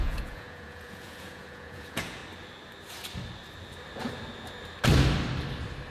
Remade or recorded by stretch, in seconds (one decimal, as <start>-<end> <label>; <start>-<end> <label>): 0.0-2.2 remade; 2.2-5.9 recorded